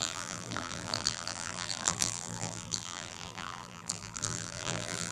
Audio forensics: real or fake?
fake